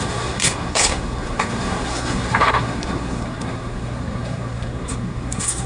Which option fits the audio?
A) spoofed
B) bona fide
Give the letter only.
A